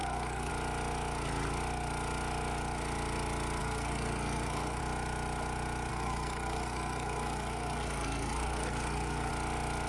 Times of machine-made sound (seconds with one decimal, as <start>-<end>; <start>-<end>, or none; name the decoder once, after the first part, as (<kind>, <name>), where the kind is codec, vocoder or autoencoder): 0.0-0.5 (codec, SNAC); 3.6-4.8; 5.9-9.3